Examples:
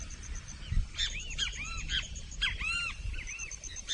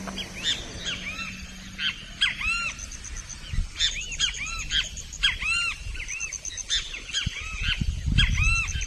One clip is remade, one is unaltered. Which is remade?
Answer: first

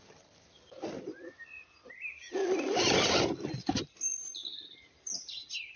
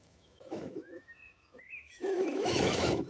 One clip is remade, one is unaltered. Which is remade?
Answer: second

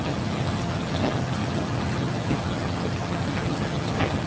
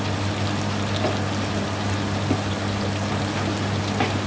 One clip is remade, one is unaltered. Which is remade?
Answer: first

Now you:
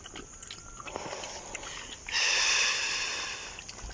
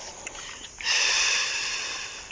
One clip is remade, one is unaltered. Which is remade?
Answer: second